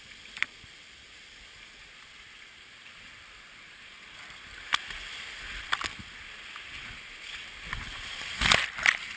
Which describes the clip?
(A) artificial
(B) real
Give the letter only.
B